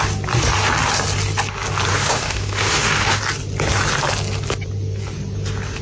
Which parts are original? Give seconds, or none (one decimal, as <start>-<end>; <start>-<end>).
0.0-1.9; 3.2-5.8